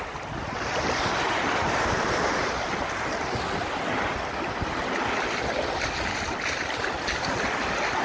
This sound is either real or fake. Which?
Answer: real